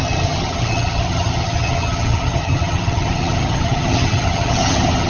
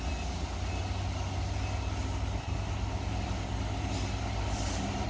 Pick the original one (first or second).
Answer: second